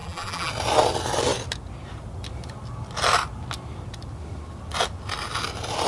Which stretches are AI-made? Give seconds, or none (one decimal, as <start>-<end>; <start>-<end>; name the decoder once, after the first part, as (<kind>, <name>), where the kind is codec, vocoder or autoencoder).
0.0-0.5 (vocoder, BigVGAN v2)